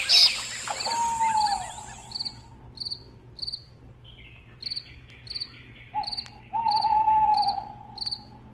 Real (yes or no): yes